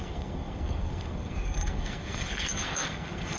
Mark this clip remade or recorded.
remade